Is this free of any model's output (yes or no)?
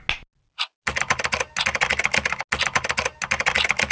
yes